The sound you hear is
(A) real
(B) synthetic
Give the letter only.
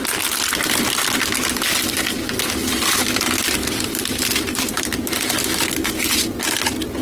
A